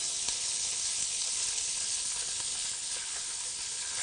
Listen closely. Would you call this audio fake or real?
fake